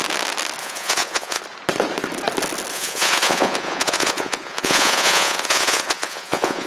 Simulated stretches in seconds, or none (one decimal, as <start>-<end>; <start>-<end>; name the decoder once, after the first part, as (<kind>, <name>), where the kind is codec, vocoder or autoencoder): 0.6-1.4 (vocoder, Vocos); 2.7-6.7